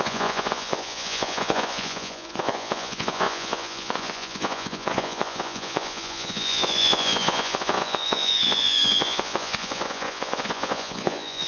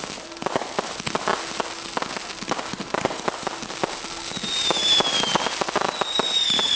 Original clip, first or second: second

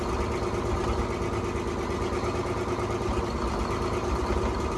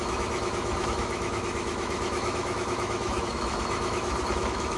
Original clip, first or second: first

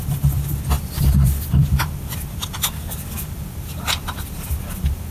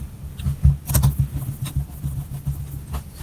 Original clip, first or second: second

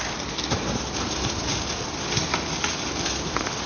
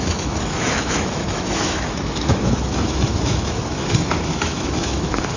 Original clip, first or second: first